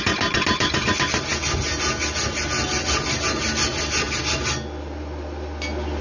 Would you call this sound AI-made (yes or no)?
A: no